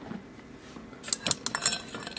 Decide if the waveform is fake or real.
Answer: real